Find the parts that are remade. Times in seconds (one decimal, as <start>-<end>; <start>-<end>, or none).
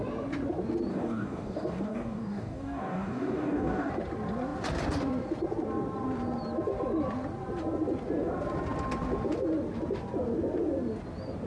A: 0.9-3.9